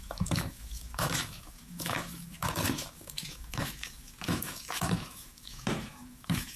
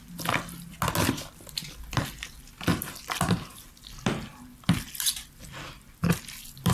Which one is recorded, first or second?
second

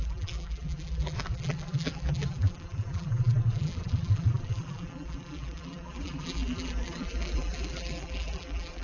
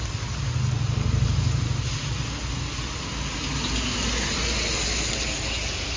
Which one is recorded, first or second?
second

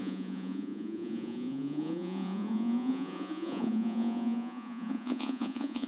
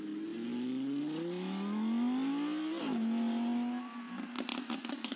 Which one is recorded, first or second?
second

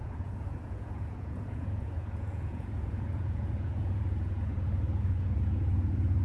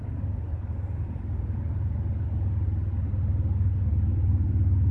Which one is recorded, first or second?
second